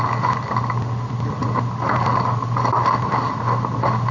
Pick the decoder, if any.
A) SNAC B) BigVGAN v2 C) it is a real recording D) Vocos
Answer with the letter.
C